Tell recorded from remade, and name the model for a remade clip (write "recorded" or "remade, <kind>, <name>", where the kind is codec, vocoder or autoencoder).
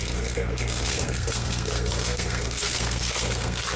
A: remade, codec, SNAC